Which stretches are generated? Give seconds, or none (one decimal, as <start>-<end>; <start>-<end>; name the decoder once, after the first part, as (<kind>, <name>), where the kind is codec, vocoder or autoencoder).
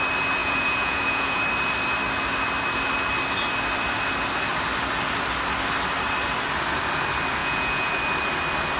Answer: 0.4-1.4 (vocoder, Vocos); 7.4-7.9